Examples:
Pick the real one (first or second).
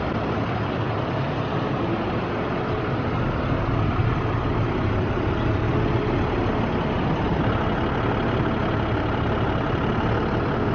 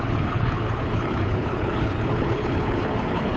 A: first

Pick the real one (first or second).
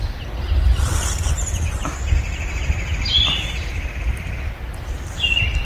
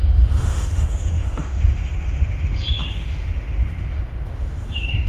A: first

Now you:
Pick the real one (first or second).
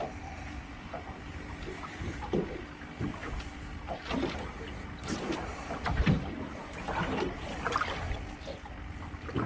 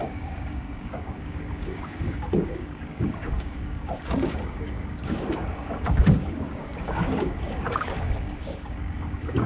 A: first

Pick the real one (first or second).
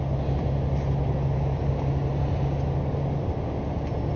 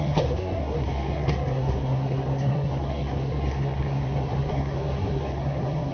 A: first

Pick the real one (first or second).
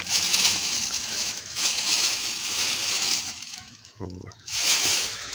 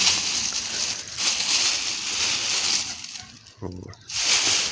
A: second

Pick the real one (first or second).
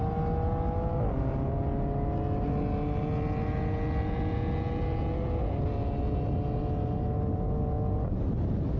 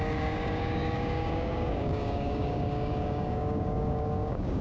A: first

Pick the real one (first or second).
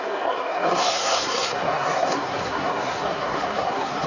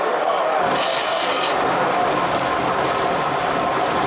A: second